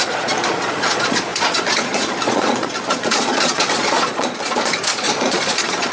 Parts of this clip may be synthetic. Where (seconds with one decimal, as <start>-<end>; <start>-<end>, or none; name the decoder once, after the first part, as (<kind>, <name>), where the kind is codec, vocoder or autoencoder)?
0.0-5.9 (vocoder, Vocos)